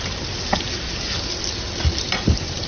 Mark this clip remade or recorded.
recorded